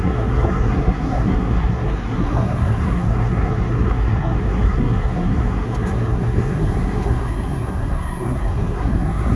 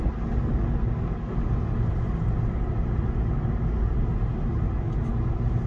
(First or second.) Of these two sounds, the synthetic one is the first